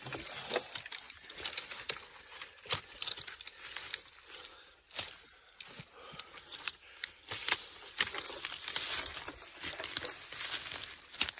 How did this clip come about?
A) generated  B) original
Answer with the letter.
B